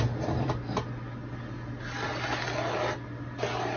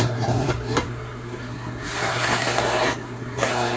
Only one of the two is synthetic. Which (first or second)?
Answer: second